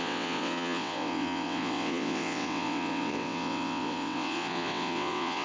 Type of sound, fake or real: fake